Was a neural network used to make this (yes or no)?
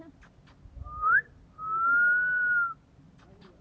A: no